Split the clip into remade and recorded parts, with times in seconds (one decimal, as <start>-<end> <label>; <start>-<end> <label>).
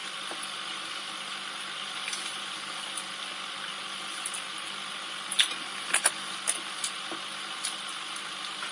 0.0-8.7 recorded